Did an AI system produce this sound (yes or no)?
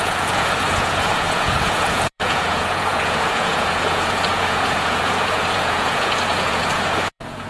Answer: yes